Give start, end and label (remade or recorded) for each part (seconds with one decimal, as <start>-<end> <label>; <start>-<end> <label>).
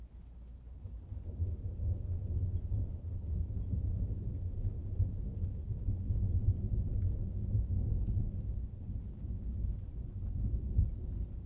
0.0-11.5 recorded